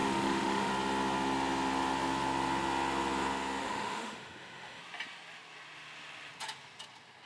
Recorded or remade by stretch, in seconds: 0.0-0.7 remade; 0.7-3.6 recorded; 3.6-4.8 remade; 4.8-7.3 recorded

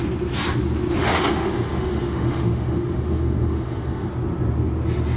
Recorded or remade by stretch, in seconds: 0.0-1.0 recorded; 1.0-4.1 remade; 4.1-5.2 recorded

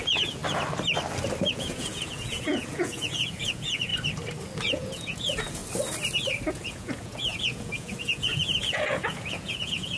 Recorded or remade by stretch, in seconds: 0.0-0.4 remade; 0.4-1.5 recorded; 1.5-3.9 remade; 3.9-4.7 recorded; 4.7-5.6 remade; 5.6-6.5 recorded; 6.5-10.0 remade

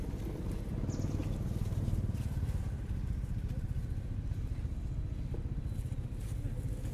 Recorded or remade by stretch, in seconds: 0.0-1.2 recorded; 1.2-2.8 remade; 2.8-6.9 recorded

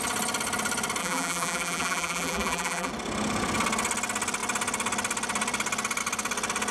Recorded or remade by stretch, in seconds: 0.0-1.0 recorded; 1.0-2.9 remade; 2.9-6.7 recorded

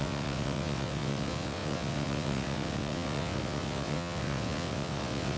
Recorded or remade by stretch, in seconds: 0.0-5.4 remade